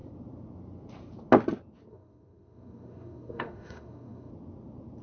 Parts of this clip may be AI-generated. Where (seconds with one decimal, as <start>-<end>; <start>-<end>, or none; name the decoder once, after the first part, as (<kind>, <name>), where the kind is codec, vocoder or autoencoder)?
1.9-4.3 (autoencoder, DAC-VAE)